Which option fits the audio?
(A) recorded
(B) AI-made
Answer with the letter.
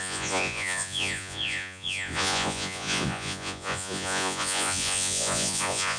B